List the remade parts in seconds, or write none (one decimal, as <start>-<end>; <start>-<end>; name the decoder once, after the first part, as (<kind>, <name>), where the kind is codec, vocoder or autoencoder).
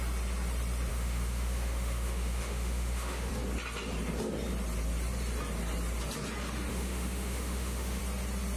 0.9-3.3 (autoencoder, DAC-VAE); 6.7-8.0